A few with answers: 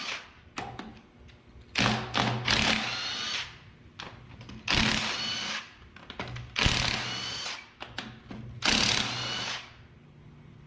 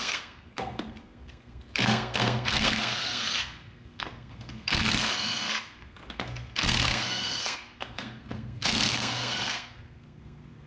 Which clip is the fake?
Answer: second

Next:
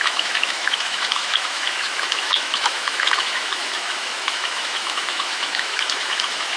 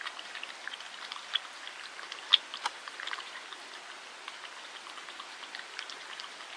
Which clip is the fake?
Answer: first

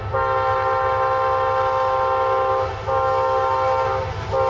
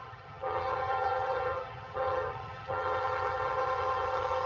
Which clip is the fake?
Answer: second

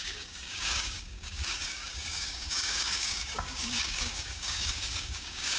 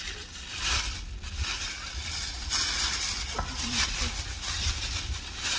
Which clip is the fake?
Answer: first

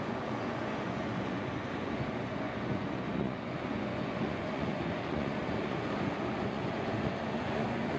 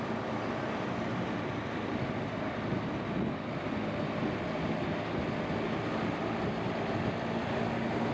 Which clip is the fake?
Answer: first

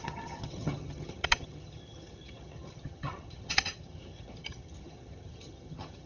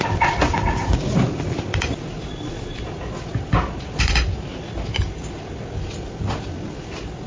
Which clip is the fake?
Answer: first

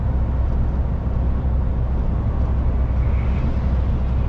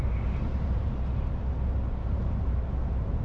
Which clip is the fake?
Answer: second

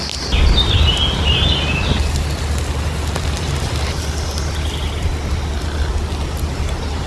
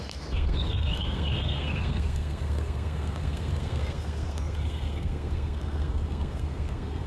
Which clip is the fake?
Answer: second